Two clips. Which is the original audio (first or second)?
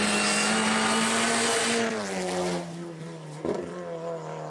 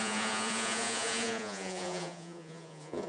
first